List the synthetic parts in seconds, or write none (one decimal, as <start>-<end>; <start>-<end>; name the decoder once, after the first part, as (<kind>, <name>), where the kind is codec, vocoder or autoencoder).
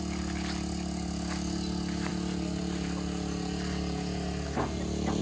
none